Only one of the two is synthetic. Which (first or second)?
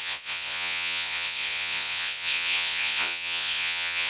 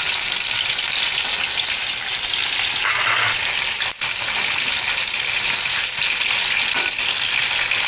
first